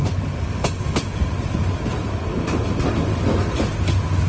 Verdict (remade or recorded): recorded